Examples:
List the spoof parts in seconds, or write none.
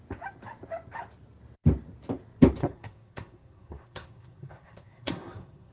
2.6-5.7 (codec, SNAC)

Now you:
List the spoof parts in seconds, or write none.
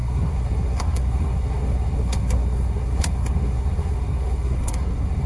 0.0-5.3 (codec, SNAC)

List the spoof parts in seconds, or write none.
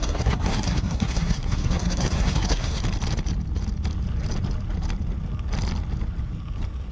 0.0-2.8 (codec, SNAC)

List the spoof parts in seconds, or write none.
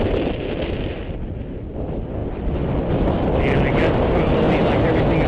none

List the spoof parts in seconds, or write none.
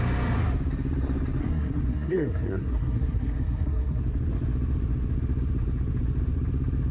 1.4-4.0 (codec, SNAC)